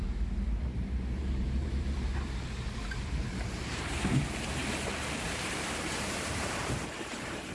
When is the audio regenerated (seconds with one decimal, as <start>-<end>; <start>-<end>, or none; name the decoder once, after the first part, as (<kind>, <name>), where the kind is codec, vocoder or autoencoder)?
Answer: 0.0-4.6 (vocoder, BigVGAN v2); 5.3-7.5